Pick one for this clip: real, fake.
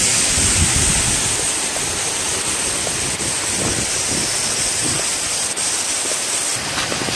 real